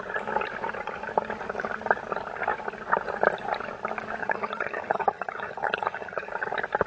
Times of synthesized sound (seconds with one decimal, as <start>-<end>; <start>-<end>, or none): 4.2-6.3